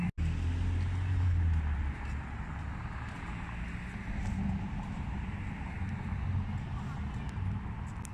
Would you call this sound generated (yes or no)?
no